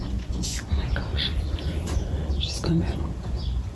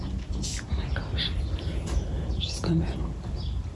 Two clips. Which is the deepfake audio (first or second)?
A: first